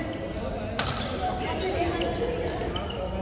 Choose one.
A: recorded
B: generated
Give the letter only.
A